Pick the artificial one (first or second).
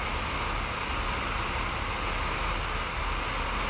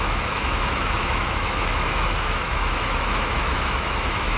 second